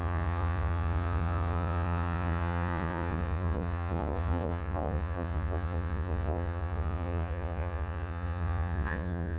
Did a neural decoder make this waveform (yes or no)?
yes